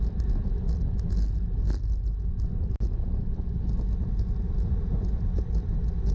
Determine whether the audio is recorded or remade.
recorded